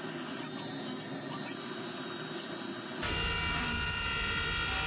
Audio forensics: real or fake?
real